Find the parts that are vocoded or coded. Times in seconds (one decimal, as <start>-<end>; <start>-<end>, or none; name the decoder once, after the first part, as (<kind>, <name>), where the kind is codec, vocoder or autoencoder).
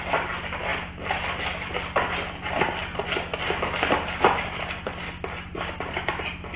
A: none